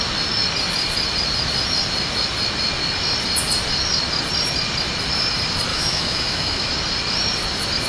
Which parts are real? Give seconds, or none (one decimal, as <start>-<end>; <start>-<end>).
0.0-5.7; 6.7-7.9